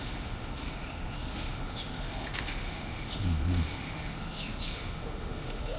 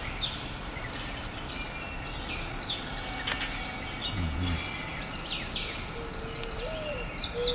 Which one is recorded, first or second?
second